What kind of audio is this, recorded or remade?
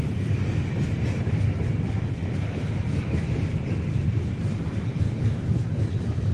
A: remade